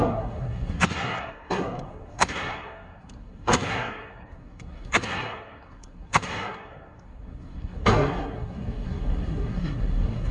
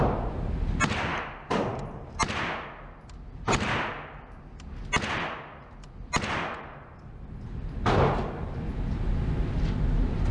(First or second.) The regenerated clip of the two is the first